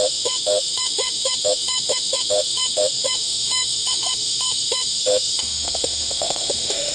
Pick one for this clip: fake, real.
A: fake